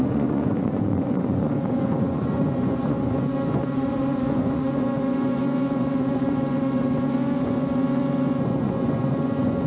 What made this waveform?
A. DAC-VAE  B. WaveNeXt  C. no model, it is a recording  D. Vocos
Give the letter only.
D